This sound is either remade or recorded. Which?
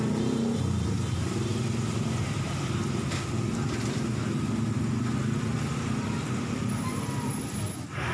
recorded